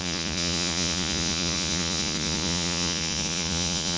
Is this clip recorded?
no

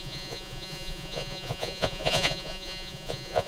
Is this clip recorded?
no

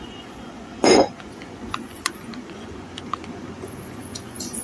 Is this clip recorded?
no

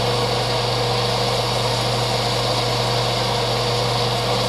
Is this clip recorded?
yes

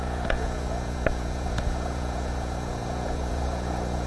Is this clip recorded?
no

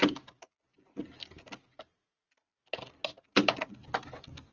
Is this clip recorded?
yes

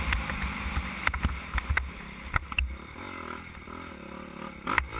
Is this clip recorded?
yes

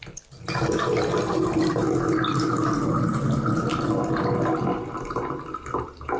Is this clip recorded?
yes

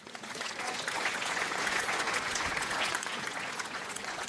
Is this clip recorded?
no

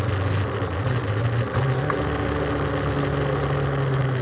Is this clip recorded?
yes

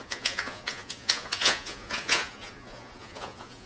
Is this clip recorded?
no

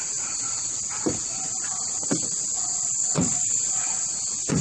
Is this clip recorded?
yes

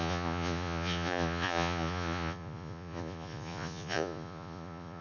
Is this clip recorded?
no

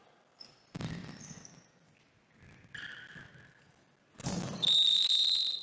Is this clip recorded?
yes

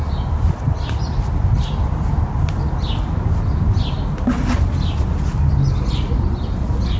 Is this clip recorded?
yes